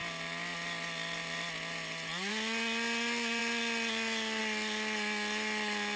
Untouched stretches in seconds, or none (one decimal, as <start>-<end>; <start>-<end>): 0.0-6.0